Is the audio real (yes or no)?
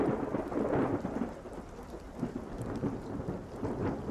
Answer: yes